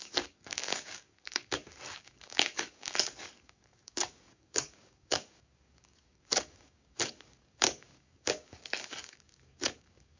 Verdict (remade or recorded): remade